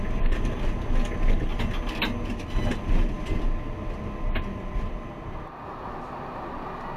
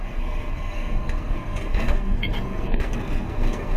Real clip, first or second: first